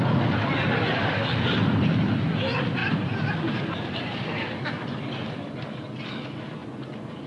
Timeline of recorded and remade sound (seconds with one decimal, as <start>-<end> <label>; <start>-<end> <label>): 0.0-6.6 recorded; 6.6-7.3 remade